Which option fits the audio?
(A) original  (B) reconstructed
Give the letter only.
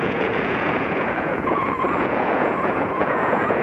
B